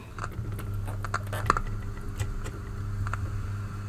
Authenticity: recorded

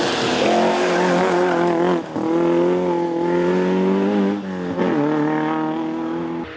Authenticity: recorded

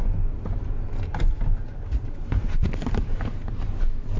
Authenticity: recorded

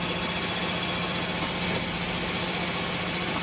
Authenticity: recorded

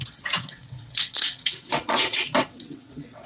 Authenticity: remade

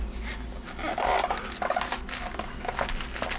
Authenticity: recorded